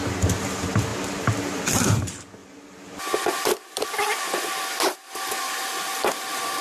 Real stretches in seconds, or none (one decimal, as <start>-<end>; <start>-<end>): 0.0-0.9; 2.0-2.4